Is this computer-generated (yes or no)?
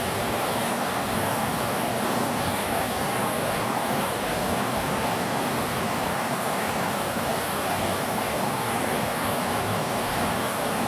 yes